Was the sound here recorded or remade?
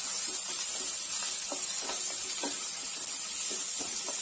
recorded